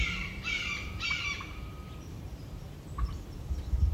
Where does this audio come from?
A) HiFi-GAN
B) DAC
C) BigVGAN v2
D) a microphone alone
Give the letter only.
C